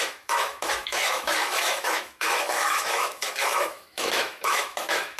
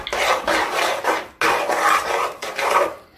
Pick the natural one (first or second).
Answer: second